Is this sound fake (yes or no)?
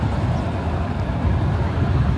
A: no